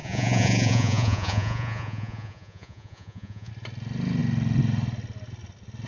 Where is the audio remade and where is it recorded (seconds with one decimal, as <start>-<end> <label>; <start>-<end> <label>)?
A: 0.0-3.5 remade; 3.5-5.9 recorded